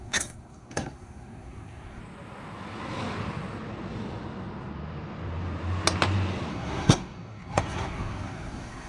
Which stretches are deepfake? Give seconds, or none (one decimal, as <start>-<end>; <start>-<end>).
0.0-2.0; 6.5-8.9